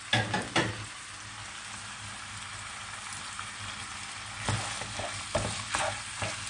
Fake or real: real